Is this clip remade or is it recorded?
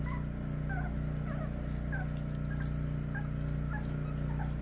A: recorded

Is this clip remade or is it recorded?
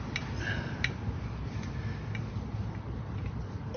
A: recorded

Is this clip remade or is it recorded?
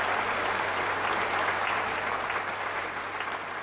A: recorded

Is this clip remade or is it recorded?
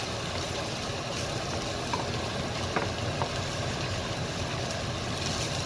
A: recorded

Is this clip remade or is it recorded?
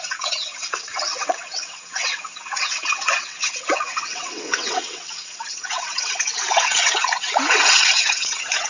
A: remade